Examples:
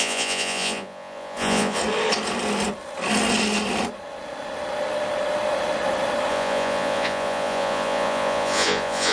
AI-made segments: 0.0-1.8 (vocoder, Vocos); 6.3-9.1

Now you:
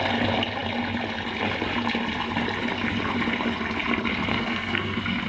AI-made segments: 4.3-5.3 (codec, SNAC)

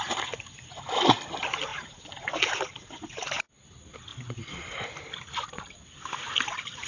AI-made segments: none